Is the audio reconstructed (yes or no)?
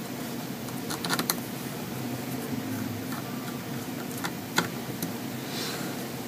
yes